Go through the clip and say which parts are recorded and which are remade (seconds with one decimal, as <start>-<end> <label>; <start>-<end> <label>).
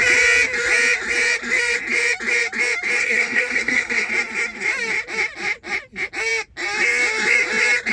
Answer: 0.0-3.0 recorded; 3.0-4.1 remade; 4.1-7.9 recorded